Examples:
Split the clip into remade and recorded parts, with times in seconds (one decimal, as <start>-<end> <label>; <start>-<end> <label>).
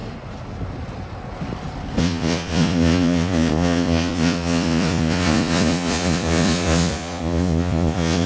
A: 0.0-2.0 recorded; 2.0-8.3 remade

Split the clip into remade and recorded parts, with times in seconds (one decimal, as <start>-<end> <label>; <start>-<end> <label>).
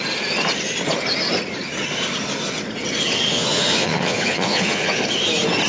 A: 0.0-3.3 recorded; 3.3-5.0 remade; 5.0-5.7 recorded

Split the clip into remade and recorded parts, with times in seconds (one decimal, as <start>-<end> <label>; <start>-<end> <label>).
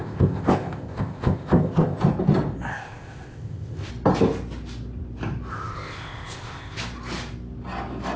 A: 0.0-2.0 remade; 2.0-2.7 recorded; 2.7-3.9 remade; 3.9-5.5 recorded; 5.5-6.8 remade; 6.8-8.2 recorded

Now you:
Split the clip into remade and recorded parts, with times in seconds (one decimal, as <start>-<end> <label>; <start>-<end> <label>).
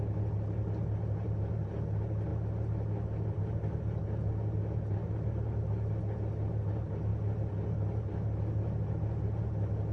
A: 0.0-9.9 recorded